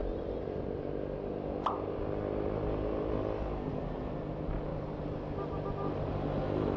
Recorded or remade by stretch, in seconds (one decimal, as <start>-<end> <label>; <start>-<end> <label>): 0.0-6.8 recorded